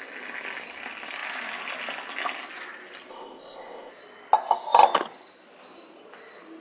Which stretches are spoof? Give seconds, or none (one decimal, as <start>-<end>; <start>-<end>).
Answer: 3.1-3.9

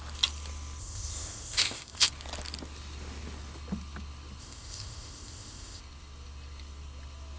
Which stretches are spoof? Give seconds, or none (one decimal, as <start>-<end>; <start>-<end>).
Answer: 0.8-2.1; 4.4-5.8

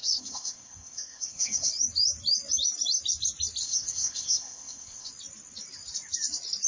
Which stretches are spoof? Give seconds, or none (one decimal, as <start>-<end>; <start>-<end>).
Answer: 0.0-1.7; 3.6-5.1

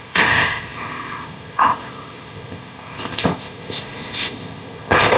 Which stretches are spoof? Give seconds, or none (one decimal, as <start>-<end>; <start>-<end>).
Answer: 0.0-5.2

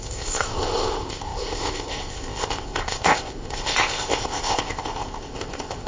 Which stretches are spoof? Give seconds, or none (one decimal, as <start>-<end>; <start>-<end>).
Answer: 0.0-5.9

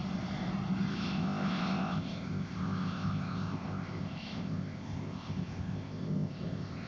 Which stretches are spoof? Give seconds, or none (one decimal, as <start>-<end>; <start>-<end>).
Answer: 0.9-6.9